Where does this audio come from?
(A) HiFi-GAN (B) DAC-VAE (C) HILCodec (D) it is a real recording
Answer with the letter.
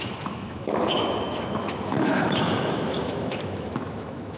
B